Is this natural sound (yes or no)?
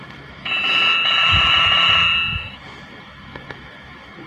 no